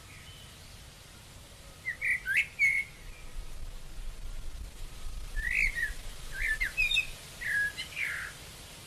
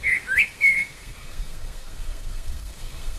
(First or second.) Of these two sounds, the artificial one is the second